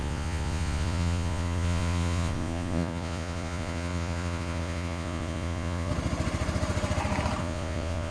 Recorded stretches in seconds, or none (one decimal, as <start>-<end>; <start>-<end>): 5.9-7.4